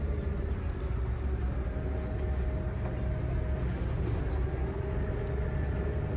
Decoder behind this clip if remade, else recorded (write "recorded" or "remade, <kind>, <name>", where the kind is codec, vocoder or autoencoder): recorded